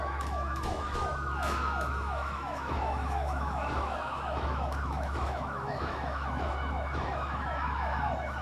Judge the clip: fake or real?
fake